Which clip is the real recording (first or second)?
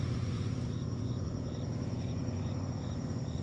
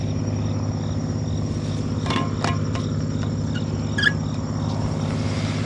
second